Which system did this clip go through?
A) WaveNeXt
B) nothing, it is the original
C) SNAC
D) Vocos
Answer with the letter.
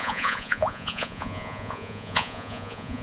D